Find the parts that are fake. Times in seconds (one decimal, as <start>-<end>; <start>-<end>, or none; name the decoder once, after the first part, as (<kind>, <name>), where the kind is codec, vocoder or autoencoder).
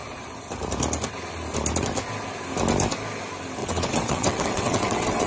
3.6-5.3 (vocoder, WaveNeXt)